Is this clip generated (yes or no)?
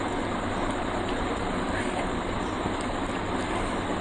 yes